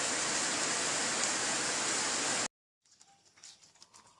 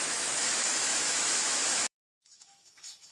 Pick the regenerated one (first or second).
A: second